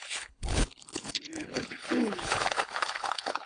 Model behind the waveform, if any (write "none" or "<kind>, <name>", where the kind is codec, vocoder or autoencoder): codec, HILCodec